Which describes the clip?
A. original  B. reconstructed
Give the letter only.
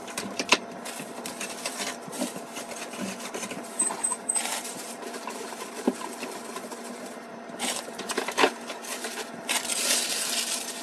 B